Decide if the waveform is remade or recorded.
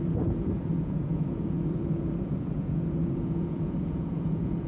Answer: remade